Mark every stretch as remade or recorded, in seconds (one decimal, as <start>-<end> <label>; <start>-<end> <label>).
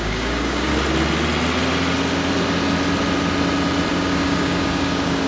0.0-0.7 remade; 0.7-3.9 recorded; 3.9-5.3 remade